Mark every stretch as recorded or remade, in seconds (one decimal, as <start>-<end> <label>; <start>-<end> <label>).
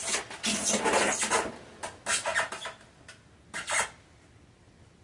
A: 0.0-5.0 recorded